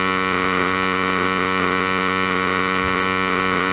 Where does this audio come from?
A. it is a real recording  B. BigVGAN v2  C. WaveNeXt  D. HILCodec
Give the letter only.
A